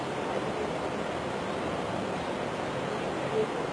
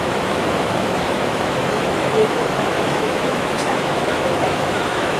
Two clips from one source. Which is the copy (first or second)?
second